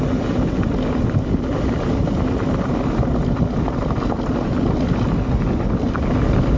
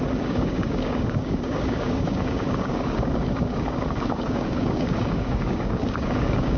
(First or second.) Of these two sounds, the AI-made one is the second